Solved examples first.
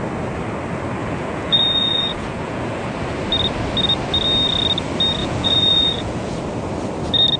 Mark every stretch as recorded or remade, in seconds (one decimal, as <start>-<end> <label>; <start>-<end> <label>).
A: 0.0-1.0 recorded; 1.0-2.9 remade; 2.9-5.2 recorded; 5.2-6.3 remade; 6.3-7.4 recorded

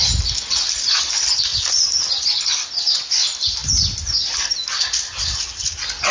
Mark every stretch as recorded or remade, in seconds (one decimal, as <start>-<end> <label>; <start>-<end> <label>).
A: 0.0-6.1 recorded

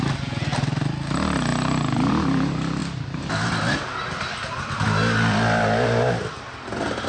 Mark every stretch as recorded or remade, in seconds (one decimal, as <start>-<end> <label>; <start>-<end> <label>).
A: 0.0-7.1 recorded

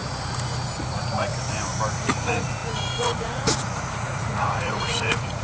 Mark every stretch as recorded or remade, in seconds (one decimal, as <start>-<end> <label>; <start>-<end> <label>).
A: 0.0-0.9 recorded; 0.9-1.3 remade; 1.3-1.9 recorded; 1.9-5.4 remade

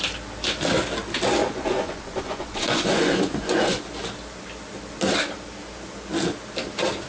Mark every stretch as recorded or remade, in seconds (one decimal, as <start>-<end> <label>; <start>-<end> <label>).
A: 0.0-1.4 recorded; 1.4-3.8 remade; 3.8-7.1 recorded

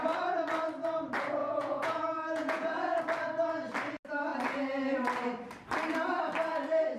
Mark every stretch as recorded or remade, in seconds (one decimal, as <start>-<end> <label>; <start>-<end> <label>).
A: 0.0-1.4 recorded; 1.4-3.0 remade; 3.0-7.0 recorded

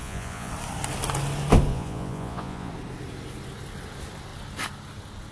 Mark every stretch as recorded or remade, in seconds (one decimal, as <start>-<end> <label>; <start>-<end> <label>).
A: 0.0-0.5 remade; 0.5-1.7 recorded; 1.7-2.7 remade; 2.7-5.3 recorded

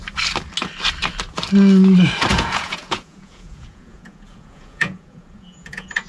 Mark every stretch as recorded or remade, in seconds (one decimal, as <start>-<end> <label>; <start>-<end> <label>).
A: 0.0-2.3 recorded; 2.3-6.1 remade